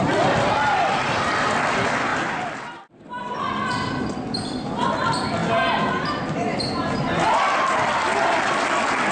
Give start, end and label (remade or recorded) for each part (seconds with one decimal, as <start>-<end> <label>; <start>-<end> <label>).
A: 0.0-5.4 remade; 5.4-6.1 recorded; 6.1-6.5 remade; 6.5-8.4 recorded; 8.4-9.1 remade